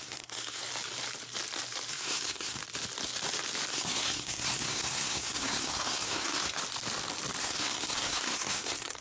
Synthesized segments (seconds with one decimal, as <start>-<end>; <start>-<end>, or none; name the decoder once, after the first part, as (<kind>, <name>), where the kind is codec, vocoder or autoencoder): 0.0-0.7 (codec, SNAC); 1.9-2.6; 3.7-6.6; 7.4-9.0